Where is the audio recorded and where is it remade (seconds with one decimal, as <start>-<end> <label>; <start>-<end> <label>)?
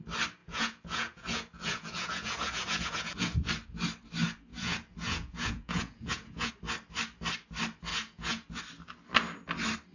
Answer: 0.0-0.4 recorded; 0.4-3.4 remade; 3.4-4.5 recorded; 4.5-6.5 remade; 6.5-7.9 recorded; 7.9-8.6 remade; 8.6-9.9 recorded